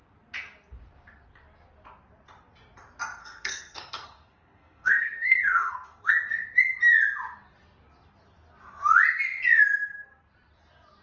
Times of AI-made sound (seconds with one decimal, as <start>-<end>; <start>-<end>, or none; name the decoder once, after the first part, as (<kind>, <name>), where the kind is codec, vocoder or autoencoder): 3.2-6.1 (codec, SNAC)